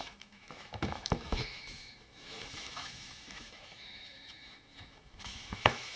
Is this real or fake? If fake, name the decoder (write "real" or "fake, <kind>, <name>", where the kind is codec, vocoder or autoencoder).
fake, autoencoder, DAC-VAE